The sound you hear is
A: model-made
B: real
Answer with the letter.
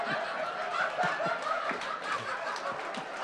B